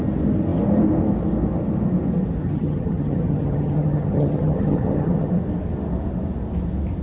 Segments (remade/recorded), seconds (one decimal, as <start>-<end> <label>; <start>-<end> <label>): 0.0-2.4 recorded; 2.4-5.3 remade; 5.3-7.0 recorded